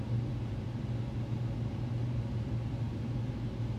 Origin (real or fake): real